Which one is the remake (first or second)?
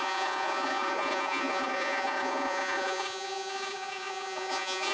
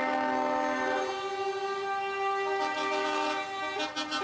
first